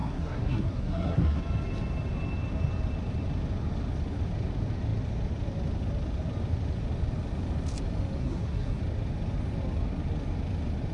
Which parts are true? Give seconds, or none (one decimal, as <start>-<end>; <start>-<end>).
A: 1.4-8.2; 8.8-10.9